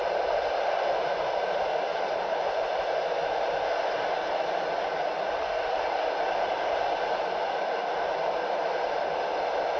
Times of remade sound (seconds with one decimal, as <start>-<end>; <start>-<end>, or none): 1.9-3.4